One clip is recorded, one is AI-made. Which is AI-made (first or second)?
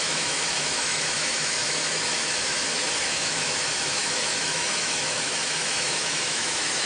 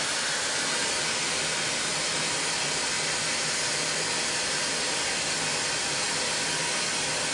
first